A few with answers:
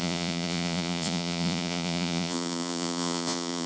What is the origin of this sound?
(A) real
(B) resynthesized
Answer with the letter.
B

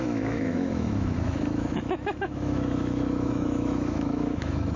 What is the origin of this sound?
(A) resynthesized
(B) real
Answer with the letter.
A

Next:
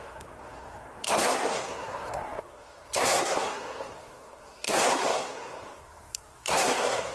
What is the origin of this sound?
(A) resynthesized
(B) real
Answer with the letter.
A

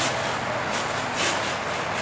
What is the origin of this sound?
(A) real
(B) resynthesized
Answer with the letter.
A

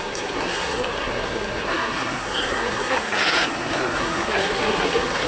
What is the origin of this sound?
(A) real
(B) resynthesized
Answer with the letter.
B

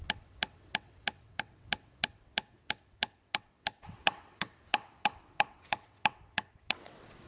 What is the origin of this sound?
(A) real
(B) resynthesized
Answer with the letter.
B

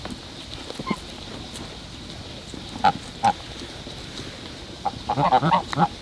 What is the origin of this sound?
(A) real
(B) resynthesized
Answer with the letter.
A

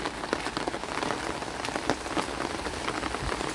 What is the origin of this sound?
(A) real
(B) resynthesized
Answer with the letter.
A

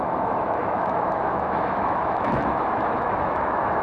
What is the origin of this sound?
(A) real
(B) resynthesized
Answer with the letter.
B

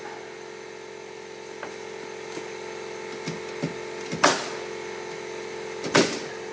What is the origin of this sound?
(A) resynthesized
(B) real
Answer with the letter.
B